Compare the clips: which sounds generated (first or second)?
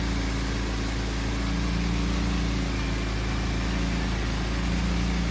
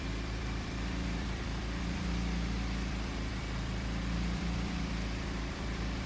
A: second